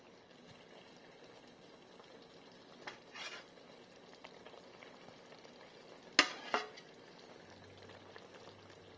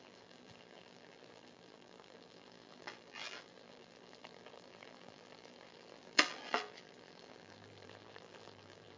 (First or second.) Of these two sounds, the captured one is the first